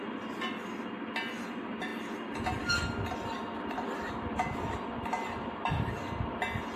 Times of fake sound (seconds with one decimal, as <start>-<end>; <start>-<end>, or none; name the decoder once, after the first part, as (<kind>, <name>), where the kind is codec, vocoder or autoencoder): none